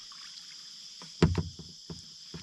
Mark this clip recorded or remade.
recorded